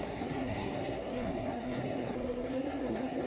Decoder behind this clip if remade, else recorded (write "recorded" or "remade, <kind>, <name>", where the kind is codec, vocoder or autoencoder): remade, codec, SNAC